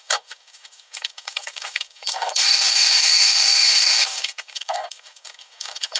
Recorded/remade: remade